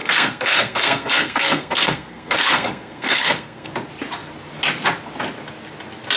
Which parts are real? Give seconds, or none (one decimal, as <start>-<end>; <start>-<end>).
3.7-6.2